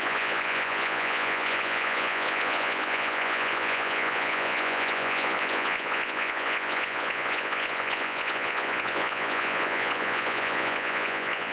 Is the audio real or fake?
fake